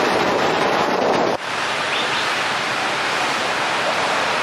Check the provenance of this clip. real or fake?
fake